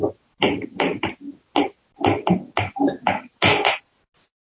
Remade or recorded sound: recorded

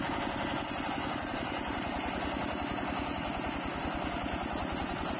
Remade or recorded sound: recorded